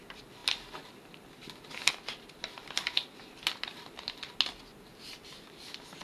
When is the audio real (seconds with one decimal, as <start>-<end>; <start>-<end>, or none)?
0.0-6.0